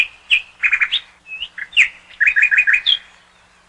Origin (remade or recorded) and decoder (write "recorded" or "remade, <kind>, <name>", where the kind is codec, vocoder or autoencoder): recorded